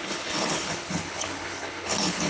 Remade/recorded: remade